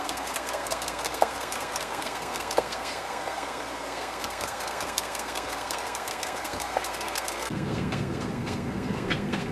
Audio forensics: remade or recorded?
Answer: remade